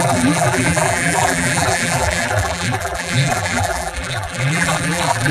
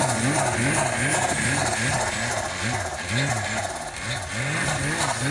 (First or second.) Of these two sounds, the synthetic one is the first